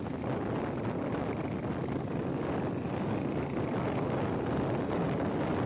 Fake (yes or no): no